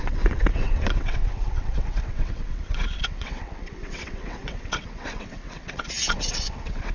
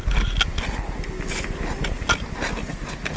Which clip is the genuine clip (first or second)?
second